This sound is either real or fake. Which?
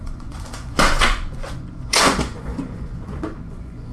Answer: fake